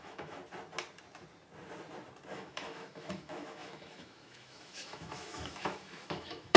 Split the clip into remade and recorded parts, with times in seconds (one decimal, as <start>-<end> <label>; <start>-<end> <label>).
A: 0.0-0.4 remade; 0.4-2.3 recorded; 2.3-6.6 remade